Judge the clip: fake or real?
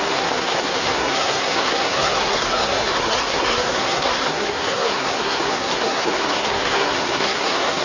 fake